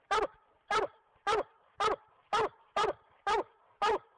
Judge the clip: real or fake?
fake